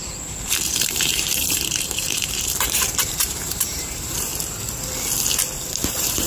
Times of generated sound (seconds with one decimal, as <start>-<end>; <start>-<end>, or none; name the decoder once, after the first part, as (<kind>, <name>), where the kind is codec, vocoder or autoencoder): 0.0-4.3 (vocoder, BigVGAN v2); 5.7-6.3

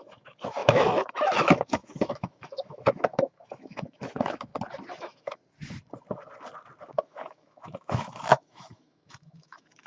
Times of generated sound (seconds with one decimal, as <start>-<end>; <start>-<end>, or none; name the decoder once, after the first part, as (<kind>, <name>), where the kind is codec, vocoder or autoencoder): 0.0-4.5 (autoencoder, DAC-VAE); 5.0-5.4; 6.9-9.9

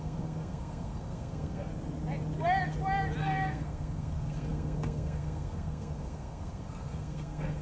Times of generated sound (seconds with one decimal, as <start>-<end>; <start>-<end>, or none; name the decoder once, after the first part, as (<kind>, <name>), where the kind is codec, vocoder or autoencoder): 0.0-1.7 (codec, SNAC); 3.2-7.6

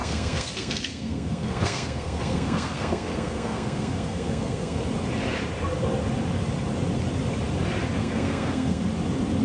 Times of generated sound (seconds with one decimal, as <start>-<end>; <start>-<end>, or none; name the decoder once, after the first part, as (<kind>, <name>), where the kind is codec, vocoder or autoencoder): 0.0-4.8 (codec, SNAC); 8.0-8.8

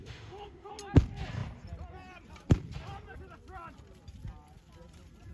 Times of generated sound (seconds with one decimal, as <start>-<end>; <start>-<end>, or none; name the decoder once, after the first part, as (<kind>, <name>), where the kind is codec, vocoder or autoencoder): 0.0-0.7 (autoencoder, DAC-VAE)

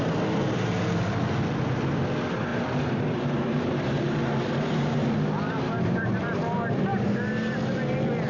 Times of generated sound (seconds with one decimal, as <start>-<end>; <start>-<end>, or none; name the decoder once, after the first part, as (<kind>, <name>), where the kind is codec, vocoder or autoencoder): 2.5-6.2 (vocoder, BigVGAN v2); 6.9-7.6